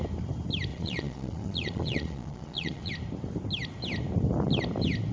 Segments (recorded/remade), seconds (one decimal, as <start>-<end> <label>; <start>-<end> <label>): 0.0-0.7 recorded; 0.7-2.9 remade; 2.9-5.1 recorded

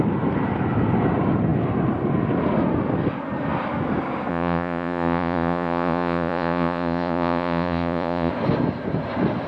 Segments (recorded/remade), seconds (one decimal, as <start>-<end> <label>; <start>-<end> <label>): 0.0-4.3 recorded; 4.3-8.3 remade; 8.3-9.5 recorded

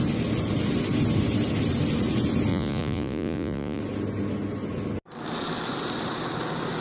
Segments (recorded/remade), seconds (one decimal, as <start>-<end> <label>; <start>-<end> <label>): 0.0-2.5 recorded; 2.5-3.8 remade; 3.8-6.8 recorded

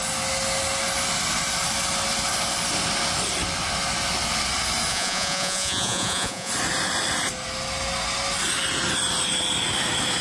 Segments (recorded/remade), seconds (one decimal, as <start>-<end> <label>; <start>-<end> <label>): 0.0-4.9 recorded; 4.9-6.5 remade; 6.5-10.2 recorded

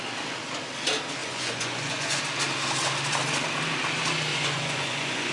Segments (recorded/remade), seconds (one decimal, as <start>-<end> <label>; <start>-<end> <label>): 0.0-1.2 recorded; 1.2-2.2 remade; 2.2-4.3 recorded; 4.3-5.3 remade